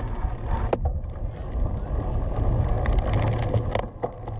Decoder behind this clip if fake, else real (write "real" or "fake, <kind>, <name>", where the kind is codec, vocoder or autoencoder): real